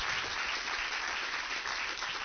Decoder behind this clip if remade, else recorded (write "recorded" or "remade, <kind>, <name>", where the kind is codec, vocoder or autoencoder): recorded